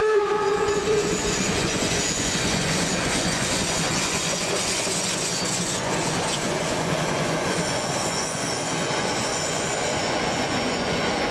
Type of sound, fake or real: fake